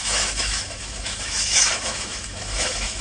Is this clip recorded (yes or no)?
no